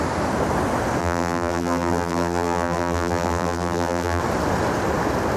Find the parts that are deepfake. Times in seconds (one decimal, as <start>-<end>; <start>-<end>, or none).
1.0-4.2

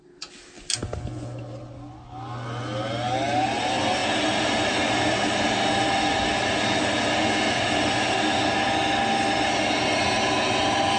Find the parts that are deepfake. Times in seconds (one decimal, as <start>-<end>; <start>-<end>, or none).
none